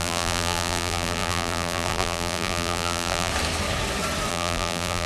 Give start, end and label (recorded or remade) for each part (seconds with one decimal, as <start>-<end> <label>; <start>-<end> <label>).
0.0-3.3 remade; 3.3-4.3 recorded; 4.3-5.1 remade